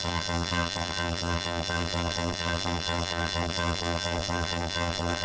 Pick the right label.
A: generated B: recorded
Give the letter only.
A